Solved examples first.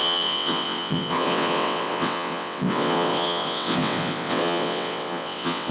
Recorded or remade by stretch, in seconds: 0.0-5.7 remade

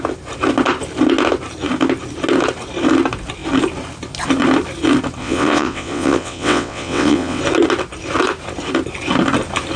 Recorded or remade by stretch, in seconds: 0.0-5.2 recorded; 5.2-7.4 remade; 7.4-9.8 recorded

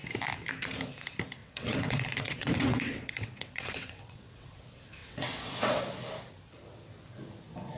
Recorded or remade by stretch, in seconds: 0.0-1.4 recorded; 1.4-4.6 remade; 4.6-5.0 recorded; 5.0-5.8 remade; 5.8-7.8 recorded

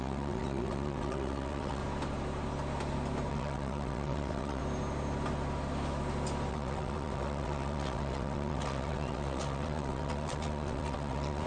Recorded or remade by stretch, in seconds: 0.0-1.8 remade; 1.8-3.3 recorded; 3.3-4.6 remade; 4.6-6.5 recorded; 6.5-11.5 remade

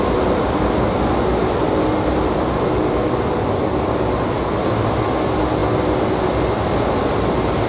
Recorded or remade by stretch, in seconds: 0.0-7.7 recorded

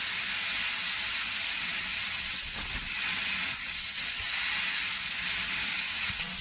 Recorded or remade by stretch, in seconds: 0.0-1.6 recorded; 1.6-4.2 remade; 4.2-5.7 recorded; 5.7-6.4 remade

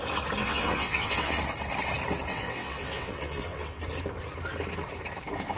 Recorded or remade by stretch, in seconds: 0.0-0.4 recorded; 0.4-1.4 remade; 1.4-2.3 recorded; 2.3-3.8 remade; 3.8-5.6 recorded